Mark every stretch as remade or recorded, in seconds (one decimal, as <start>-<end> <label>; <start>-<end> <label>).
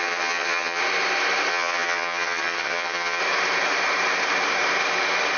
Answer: 0.0-0.8 remade; 0.8-1.5 recorded; 1.5-3.2 remade; 3.2-5.4 recorded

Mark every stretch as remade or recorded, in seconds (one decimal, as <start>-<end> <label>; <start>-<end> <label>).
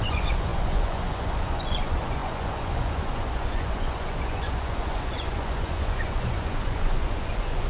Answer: 0.0-7.7 remade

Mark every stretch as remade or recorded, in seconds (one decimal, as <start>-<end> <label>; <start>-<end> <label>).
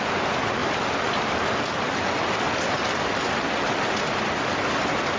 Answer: 0.0-5.2 recorded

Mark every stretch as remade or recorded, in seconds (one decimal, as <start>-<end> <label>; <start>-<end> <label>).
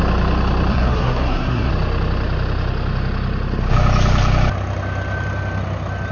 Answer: 0.0-0.7 recorded; 0.7-1.7 remade; 1.7-6.1 recorded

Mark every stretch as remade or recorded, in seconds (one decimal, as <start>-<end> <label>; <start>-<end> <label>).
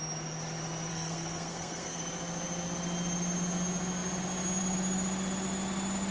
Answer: 0.0-0.9 recorded; 0.9-2.0 remade; 2.0-6.1 recorded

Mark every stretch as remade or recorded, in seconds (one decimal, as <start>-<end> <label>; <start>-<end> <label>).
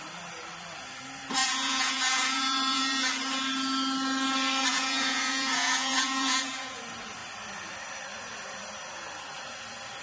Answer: 0.0-1.4 recorded; 1.4-3.1 remade; 3.1-4.7 recorded; 4.7-6.8 remade; 6.8-10.0 recorded